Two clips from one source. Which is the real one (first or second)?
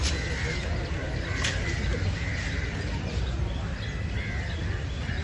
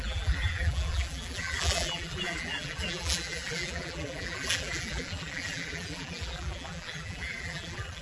first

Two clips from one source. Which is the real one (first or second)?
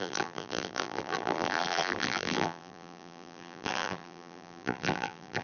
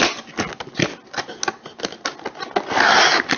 second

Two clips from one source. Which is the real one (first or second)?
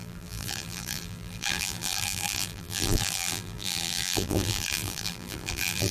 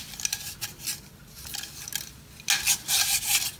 second